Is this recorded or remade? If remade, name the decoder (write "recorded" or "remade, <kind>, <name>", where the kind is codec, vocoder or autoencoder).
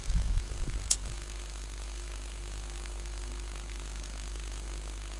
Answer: remade, codec, SNAC